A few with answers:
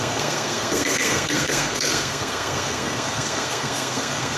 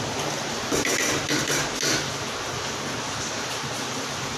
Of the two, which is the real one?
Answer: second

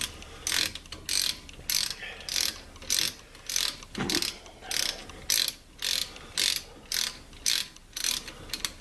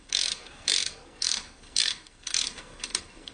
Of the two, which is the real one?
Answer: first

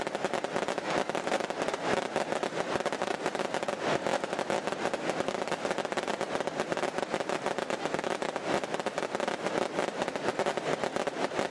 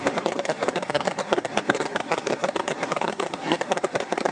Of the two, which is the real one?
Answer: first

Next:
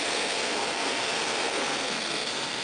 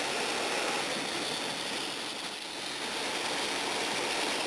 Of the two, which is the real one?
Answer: second